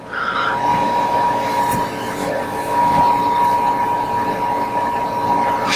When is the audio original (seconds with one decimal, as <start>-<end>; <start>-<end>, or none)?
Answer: 0.0-0.7; 1.6-2.2; 3.0-5.8